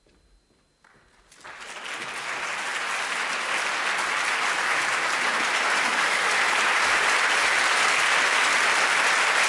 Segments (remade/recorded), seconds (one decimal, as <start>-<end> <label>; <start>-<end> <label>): 0.0-5.9 recorded; 5.9-6.4 remade; 6.4-9.5 recorded